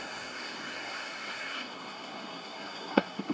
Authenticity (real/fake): fake